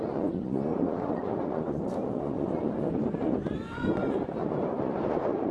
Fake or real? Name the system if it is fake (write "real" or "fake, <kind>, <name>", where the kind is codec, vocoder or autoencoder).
fake, vocoder, Vocos